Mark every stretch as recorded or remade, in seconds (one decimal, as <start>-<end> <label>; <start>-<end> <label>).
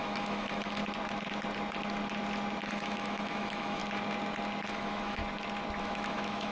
0.0-0.8 remade; 0.8-2.7 recorded; 2.7-3.8 remade; 3.8-4.7 recorded; 4.7-5.2 remade; 5.2-5.8 recorded; 5.8-6.5 remade